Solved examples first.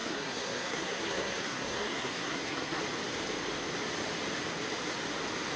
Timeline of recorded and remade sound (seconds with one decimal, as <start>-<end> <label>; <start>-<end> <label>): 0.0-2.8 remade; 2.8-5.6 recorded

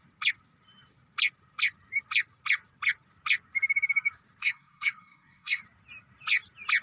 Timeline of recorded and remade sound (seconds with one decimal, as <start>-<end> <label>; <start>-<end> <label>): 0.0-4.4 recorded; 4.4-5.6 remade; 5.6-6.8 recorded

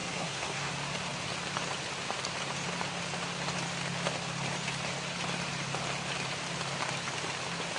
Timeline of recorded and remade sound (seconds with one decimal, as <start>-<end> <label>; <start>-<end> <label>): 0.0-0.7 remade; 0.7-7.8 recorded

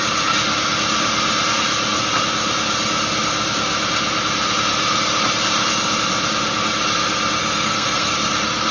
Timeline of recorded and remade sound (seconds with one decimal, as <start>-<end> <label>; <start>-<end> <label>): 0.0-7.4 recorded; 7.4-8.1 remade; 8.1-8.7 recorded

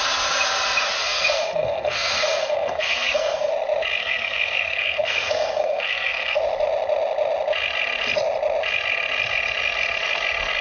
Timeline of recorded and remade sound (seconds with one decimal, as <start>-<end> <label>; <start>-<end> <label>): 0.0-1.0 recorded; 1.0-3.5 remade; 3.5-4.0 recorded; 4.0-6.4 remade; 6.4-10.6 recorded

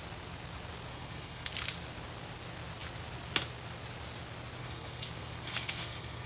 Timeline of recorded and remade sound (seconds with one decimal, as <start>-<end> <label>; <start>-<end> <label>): 0.0-0.9 recorded; 0.9-1.5 remade; 1.5-4.6 recorded; 4.6-6.3 remade

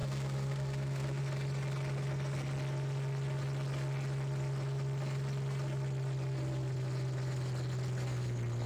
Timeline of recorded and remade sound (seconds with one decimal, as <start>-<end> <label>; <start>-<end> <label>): 0.0-1.2 remade; 1.2-8.7 recorded